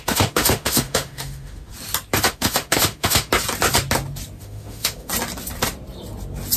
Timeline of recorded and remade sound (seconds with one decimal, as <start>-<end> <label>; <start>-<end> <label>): 0.0-1.7 remade; 1.7-2.3 recorded; 2.3-3.3 remade; 3.3-4.4 recorded; 4.4-5.1 remade; 5.1-6.6 recorded